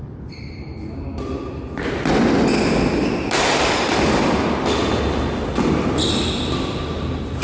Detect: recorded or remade recorded